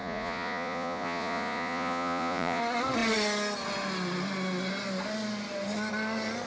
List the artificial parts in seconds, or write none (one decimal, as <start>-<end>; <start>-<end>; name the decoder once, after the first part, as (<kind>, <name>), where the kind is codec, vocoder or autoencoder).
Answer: 0.0-2.6 (vocoder, Vocos)